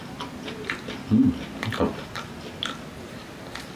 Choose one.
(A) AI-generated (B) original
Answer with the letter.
B